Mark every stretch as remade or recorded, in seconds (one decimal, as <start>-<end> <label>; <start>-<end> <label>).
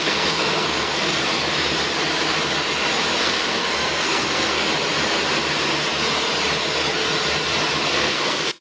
0.0-1.3 remade; 1.3-3.2 recorded; 3.2-4.7 remade; 4.7-7.8 recorded; 7.8-8.6 remade